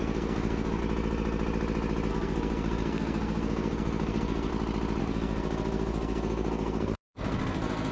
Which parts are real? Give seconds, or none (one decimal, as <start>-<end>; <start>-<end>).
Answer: 0.8-2.1; 4.5-5.0